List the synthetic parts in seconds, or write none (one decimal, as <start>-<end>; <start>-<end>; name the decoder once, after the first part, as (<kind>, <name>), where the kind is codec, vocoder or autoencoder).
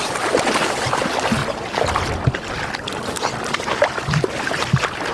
none